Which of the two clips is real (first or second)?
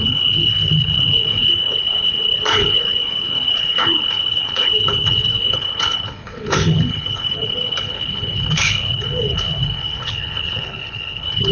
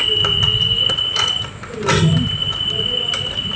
second